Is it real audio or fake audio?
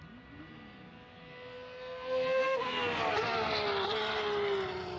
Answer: real